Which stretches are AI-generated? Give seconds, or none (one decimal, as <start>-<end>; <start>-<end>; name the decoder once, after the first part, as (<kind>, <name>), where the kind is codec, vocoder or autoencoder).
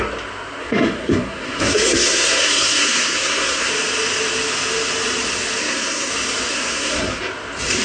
0.6-3.7 (codec, SNAC); 5.6-6.1; 6.5-7.2